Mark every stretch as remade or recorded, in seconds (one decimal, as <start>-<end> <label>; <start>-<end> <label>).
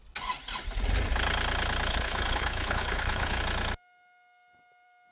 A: 0.0-1.9 recorded; 1.9-3.4 remade; 3.4-5.1 recorded